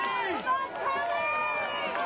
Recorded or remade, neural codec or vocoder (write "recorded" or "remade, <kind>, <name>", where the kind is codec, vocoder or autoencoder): recorded